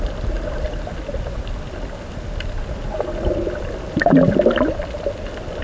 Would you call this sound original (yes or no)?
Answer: yes